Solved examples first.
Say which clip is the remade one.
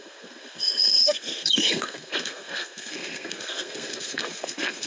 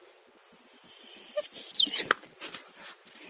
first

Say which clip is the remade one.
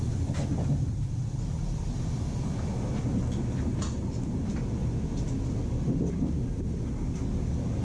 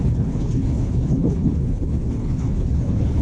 second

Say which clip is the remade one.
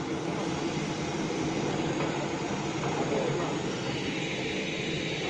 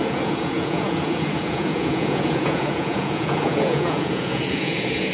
second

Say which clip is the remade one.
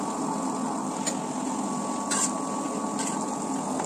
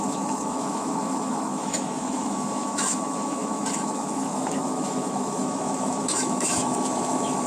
second